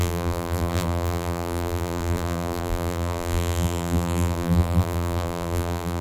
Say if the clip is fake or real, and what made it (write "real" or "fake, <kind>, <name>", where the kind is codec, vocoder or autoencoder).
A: fake, vocoder, BigVGAN v2